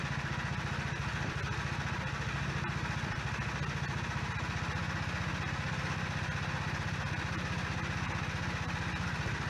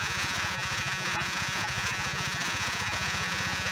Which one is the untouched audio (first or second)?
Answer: first